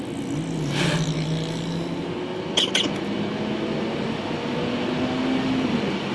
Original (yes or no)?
yes